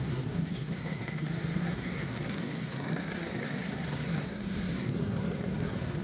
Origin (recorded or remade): remade